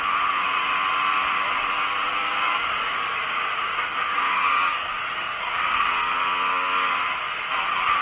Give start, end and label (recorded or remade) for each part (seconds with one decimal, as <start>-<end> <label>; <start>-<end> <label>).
0.0-2.2 recorded; 2.2-6.1 remade; 6.1-6.5 recorded; 6.5-7.0 remade; 7.0-8.0 recorded